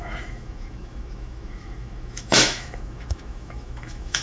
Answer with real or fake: fake